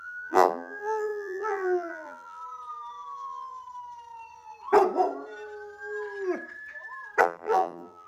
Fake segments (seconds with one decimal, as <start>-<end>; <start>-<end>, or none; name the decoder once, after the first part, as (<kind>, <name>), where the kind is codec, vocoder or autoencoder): 0.0-2.4 (vocoder, BigVGAN v2); 7.2-8.1